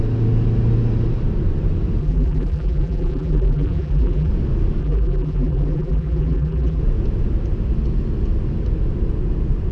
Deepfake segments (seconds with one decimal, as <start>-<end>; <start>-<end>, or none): 2.0-4.3; 4.8-6.8